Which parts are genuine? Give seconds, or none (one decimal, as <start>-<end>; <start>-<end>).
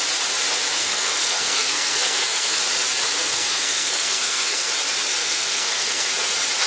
0.0-0.8; 2.6-3.2; 4.7-5.2; 6.1-6.7